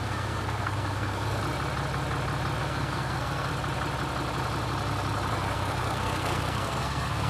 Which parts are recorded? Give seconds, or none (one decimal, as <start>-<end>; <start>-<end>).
1.4-2.6; 3.5-5.3